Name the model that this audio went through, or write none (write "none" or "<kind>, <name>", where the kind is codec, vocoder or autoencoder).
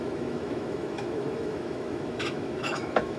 autoencoder, DAC-VAE